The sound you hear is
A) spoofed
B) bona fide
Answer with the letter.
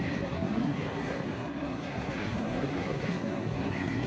A